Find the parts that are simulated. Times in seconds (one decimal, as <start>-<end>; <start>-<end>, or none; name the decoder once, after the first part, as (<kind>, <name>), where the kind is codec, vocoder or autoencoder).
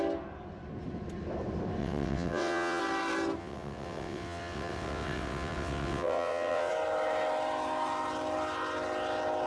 1.8-2.8 (vocoder, WaveNeXt); 3.4-6.7